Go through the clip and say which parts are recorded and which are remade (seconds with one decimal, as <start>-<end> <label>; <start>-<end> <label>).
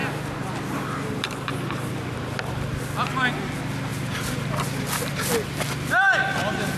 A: 0.0-6.8 recorded